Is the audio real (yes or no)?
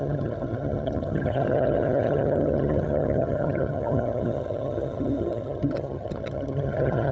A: no